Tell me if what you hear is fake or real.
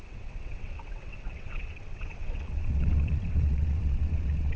fake